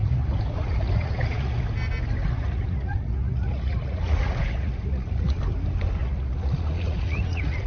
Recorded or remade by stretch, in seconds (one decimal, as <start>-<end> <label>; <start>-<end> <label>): 0.0-1.6 remade; 1.6-2.2 recorded; 2.2-5.4 remade; 5.4-6.0 recorded; 6.0-7.7 remade